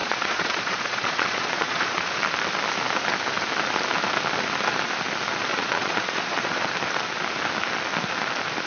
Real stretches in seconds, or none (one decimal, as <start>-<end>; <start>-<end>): 2.2-5.5; 6.7-8.7